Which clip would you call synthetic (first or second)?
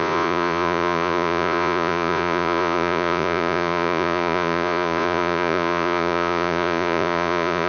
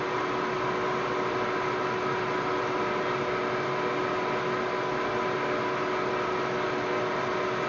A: first